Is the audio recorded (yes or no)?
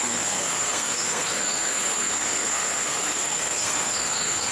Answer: no